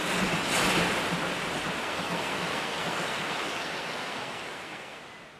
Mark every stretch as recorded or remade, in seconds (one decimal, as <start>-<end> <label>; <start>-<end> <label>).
0.0-1.8 recorded; 1.8-5.0 remade; 5.0-5.4 recorded